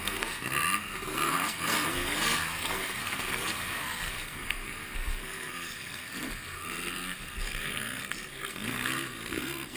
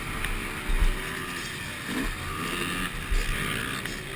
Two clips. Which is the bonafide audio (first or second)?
second